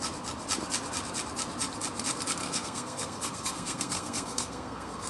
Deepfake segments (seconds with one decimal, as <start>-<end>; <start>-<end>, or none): 2.4-5.1